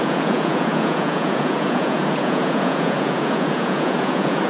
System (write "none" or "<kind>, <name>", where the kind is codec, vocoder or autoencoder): vocoder, Vocos